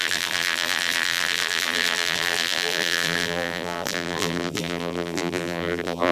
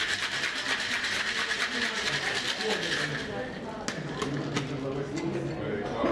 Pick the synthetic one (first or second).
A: first